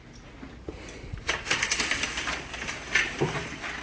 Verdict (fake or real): real